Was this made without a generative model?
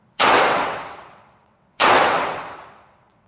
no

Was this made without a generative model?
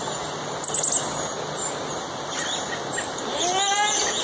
yes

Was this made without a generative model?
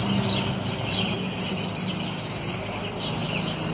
yes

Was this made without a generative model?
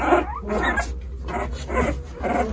yes